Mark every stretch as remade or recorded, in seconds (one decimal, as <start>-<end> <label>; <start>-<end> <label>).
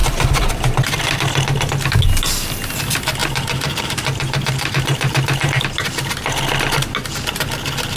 0.0-3.2 recorded; 3.2-5.6 remade; 5.6-8.0 recorded